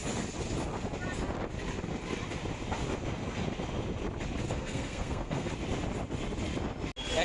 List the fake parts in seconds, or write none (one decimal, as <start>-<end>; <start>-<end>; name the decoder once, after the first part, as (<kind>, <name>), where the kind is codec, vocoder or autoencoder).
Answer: 4.5-5.5 (codec, SNAC)